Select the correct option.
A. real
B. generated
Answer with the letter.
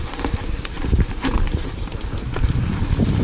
B